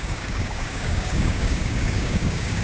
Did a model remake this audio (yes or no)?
yes